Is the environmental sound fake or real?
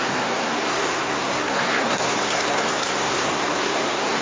fake